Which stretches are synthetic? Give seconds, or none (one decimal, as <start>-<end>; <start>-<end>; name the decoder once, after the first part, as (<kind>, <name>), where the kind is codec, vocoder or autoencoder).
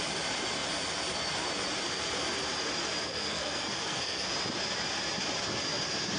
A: 3.0-4.3 (codec, SNAC)